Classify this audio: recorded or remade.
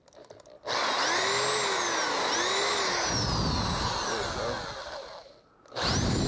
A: recorded